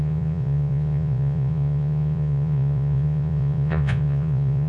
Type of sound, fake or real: fake